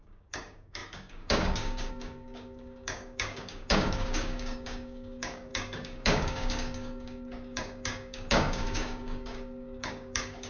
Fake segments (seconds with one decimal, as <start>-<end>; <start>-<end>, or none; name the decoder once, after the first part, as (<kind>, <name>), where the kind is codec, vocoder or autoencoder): 0.0-10.5 (codec, DAC)